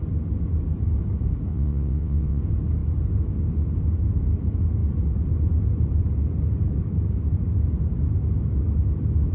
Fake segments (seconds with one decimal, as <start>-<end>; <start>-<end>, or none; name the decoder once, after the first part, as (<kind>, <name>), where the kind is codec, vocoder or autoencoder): 1.5-2.4 (vocoder, WaveNeXt)